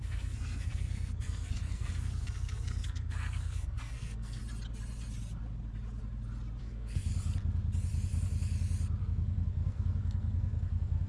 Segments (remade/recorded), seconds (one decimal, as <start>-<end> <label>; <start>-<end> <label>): 0.0-4.4 remade; 4.4-6.6 recorded; 6.6-7.1 remade; 7.1-9.0 recorded; 9.0-11.1 remade